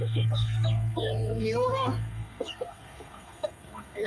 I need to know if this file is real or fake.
fake